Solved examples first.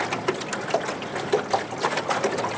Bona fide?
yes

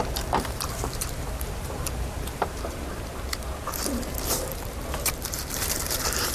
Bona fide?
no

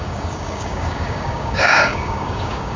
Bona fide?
no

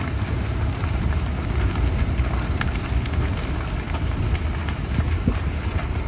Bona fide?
yes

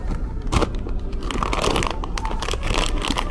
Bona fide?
yes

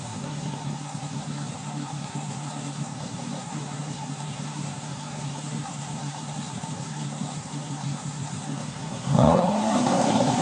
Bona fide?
no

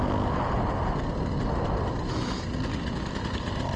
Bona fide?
yes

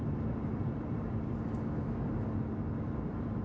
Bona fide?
no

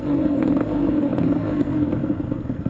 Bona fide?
no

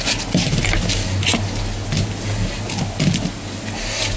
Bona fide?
yes